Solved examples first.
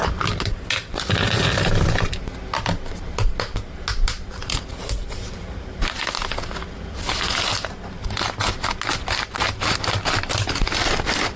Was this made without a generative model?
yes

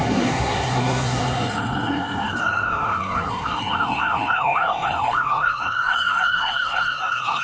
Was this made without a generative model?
no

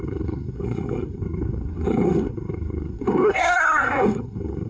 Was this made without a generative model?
no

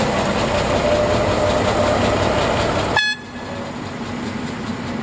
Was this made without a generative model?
yes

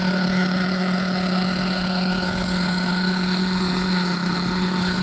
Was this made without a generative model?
no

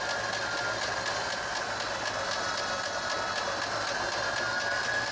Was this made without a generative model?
yes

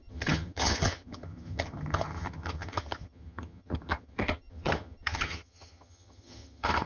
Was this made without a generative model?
no